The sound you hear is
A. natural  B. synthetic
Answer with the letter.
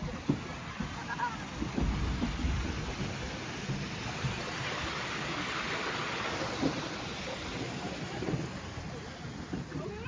A